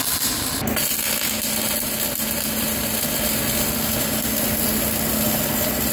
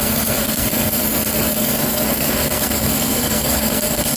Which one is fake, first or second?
second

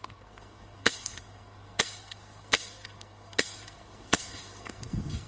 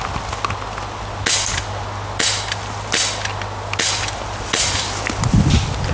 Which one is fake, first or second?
first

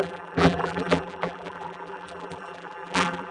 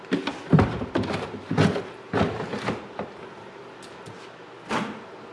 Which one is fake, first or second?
first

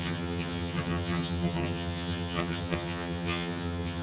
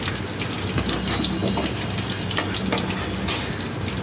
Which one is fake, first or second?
first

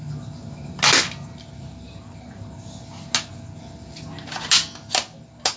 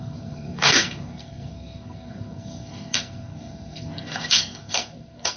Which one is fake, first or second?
second